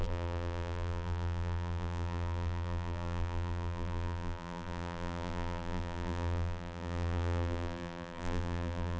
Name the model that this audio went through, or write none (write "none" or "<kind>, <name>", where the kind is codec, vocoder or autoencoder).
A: vocoder, BigVGAN v2